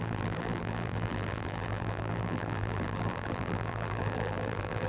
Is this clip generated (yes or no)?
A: yes